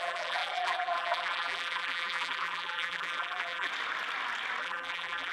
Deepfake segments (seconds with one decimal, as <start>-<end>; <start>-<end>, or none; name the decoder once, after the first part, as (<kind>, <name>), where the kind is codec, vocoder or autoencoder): 0.0-3.7 (vocoder, BigVGAN v2); 4.6-5.3